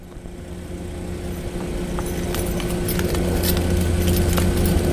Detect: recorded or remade recorded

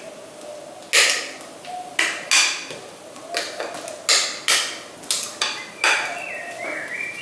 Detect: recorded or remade recorded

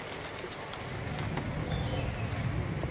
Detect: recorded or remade recorded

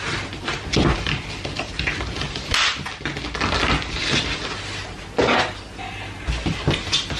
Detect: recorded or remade recorded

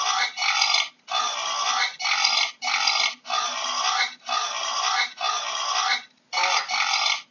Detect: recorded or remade recorded